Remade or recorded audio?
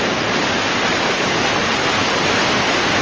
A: remade